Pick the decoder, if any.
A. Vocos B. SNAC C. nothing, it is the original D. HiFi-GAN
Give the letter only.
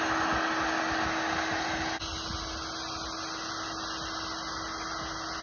C